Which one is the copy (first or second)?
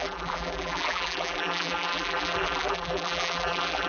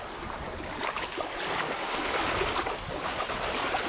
first